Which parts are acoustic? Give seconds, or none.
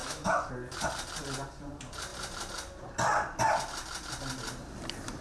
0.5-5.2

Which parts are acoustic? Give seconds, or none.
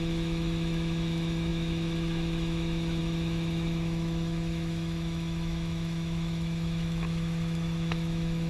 none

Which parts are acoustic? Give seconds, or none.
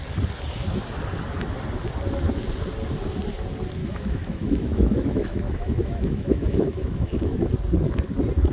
0.0-3.8; 7.5-8.5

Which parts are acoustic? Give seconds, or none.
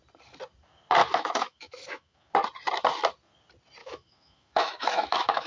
0.0-1.0; 2.3-3.8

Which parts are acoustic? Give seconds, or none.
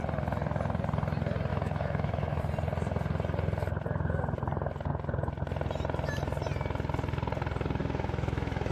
0.0-1.5; 2.4-7.8